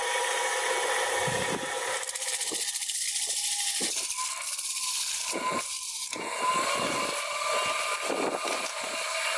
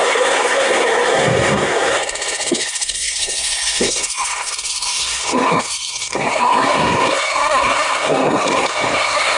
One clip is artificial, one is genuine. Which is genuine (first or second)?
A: first